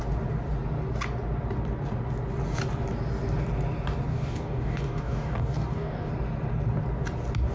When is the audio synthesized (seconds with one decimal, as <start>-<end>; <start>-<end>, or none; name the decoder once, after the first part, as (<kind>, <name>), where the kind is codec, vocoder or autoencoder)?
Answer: 4.1-6.1 (codec, DAC)